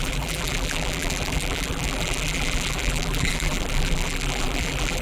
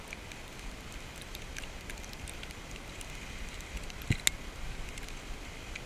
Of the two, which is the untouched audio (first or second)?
second